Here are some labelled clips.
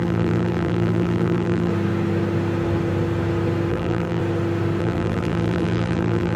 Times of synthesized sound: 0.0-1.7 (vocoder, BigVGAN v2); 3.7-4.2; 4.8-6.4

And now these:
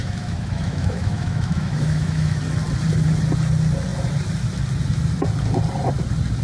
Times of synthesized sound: 0.0-2.4 (autoencoder, DAC-VAE)

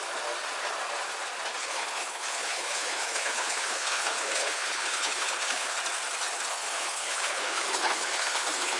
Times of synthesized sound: 1.6-5.8 (codec, HILCodec); 6.5-8.8

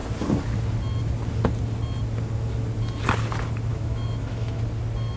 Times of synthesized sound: 3.7-4.6 (autoencoder, DAC-VAE)

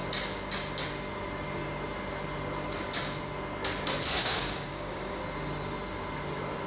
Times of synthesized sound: 4.2-5.2 (codec, DAC)

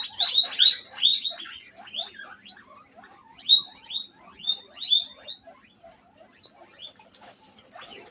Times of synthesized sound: 1.1-1.7 (vocoder, Vocos)

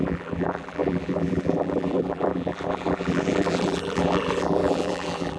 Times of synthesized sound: 0.0-5.4 (vocoder, BigVGAN v2)